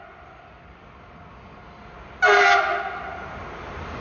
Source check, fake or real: real